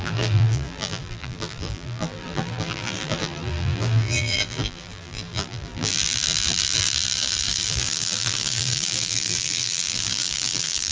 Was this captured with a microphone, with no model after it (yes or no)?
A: no